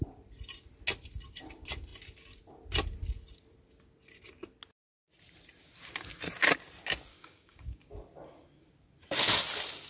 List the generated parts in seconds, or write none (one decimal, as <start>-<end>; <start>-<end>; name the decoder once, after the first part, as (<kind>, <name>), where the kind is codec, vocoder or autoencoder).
7.1-7.9 (codec, DAC)